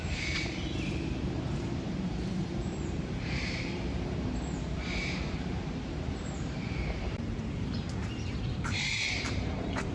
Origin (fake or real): fake